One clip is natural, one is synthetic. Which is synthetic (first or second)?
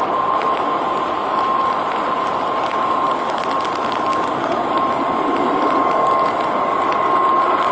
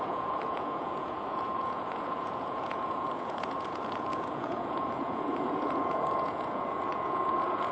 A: second